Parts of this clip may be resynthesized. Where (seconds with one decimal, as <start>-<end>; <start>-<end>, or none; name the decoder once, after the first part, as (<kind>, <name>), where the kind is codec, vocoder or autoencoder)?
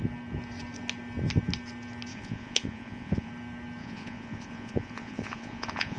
2.1-3.3 (vocoder, Vocos); 3.8-6.0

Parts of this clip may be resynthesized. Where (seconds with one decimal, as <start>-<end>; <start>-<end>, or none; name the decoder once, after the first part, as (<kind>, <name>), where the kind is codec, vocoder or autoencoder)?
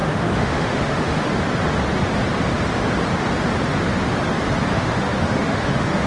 0.0-1.1 (autoencoder, DAC-VAE); 4.7-6.1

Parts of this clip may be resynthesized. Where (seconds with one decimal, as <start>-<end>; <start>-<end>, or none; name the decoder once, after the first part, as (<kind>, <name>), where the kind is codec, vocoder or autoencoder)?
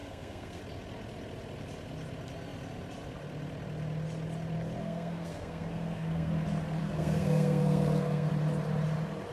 0.0-0.6 (codec, SNAC); 4.8-6.3; 6.8-8.3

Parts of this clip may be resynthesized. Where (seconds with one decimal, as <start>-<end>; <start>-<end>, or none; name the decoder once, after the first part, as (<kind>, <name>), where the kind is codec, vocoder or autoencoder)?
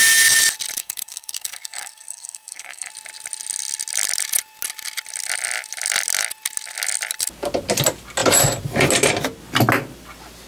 0.8-2.9 (codec, SNAC)